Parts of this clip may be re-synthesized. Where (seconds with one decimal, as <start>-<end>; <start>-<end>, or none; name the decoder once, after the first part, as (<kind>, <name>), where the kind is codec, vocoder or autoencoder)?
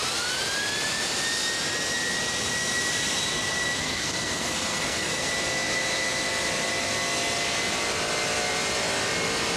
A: 3.8-5.3 (codec, SNAC)